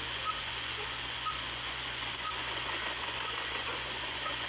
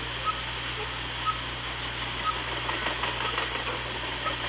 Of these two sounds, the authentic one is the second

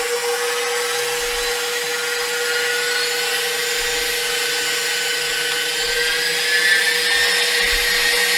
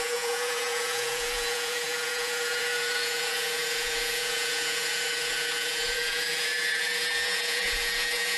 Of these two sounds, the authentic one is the first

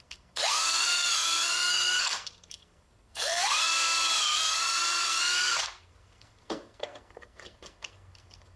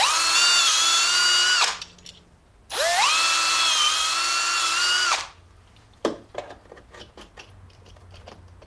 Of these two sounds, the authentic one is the second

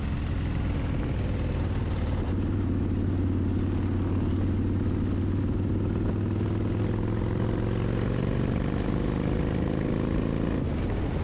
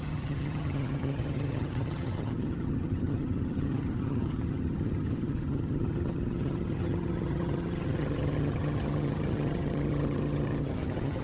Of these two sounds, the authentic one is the first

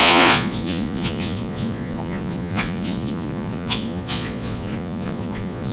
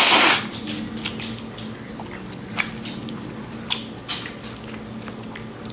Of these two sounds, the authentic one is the second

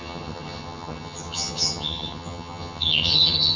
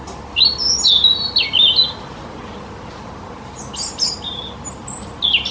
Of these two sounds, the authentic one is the second